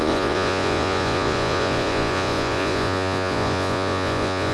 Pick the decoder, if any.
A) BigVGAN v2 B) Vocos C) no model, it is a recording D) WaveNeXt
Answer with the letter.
B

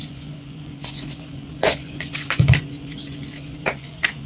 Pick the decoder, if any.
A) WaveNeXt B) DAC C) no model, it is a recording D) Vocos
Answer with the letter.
D